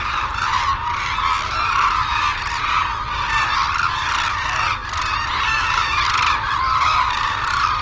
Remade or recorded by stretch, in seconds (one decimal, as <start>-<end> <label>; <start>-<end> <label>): 0.0-7.8 recorded